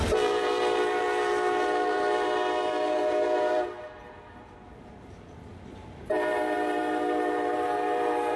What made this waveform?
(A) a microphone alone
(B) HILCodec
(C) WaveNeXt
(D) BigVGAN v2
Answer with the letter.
D